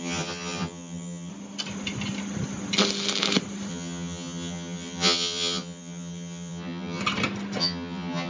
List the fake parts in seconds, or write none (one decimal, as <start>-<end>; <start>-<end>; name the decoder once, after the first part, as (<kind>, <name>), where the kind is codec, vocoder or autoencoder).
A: 0.0-1.3 (vocoder, HiFi-GAN); 3.7-7.0; 7.6-8.3